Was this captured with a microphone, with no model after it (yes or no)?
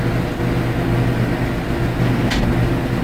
yes